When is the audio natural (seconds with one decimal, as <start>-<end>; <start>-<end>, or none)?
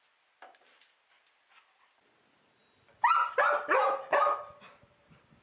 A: 0.0-5.4